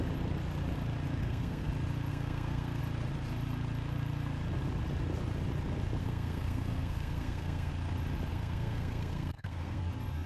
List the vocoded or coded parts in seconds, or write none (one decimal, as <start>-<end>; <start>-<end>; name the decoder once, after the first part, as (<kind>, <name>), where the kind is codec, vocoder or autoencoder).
1.2-1.7 (codec, SNAC); 2.1-2.8; 6.0-7.7; 8.3-9.8